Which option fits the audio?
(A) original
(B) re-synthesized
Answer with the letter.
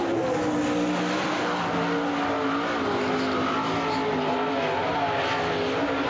A